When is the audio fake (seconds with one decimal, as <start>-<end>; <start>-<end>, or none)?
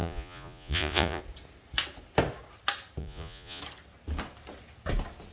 0.0-1.2; 3.0-3.6